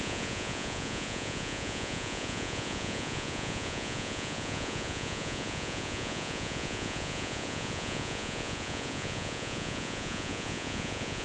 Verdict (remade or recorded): remade